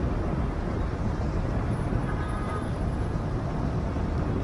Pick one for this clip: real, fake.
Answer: fake